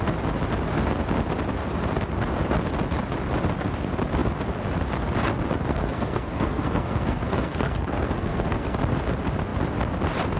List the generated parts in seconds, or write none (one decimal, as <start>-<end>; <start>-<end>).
5.7-8.8